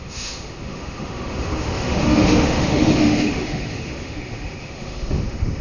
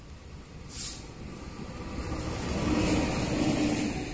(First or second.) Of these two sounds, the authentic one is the second